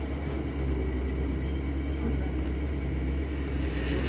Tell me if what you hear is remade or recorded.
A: recorded